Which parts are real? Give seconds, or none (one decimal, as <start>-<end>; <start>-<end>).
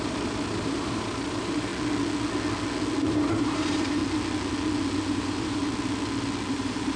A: 1.7-3.1; 4.0-5.1; 5.6-6.5